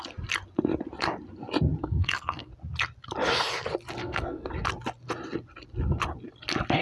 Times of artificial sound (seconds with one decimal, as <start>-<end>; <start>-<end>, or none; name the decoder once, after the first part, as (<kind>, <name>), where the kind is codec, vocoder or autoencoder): 1.8-2.5 (codec, SNAC); 4.0-4.5